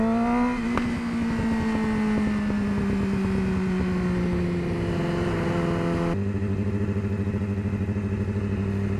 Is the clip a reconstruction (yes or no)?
no